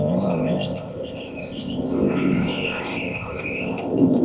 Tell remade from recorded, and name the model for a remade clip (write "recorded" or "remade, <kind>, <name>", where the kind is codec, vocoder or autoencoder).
remade, codec, ZipCodec